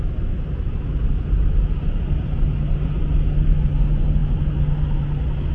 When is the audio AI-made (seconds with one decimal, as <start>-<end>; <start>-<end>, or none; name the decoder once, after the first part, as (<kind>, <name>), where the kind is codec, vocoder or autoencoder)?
none